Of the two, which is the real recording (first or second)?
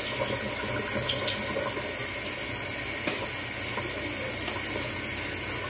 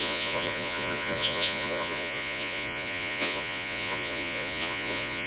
first